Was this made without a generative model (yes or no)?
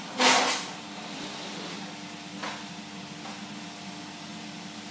yes